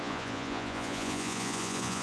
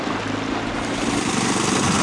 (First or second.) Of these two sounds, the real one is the second